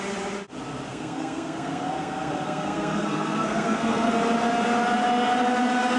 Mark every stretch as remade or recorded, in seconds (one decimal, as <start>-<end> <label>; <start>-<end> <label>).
0.0-0.9 recorded; 0.9-4.1 remade; 4.1-6.0 recorded